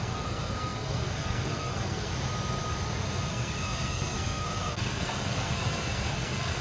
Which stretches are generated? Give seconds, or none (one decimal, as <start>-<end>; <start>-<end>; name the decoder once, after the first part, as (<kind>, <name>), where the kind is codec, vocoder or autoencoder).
0.0-2.1 (codec, SNAC); 3.3-6.6

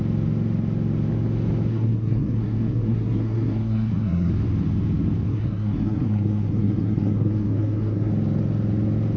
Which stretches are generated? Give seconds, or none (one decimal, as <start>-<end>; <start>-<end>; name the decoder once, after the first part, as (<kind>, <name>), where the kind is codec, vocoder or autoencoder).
1.7-4.3 (codec, SNAC); 5.3-8.1

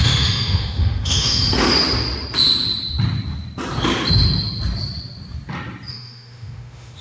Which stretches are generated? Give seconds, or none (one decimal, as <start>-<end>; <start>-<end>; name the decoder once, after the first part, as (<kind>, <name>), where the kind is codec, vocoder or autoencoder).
0.0-1.7 (autoencoder, DAC-VAE); 5.9-7.0